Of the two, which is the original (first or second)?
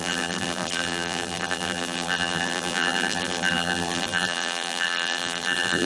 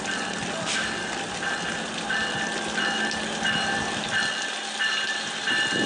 second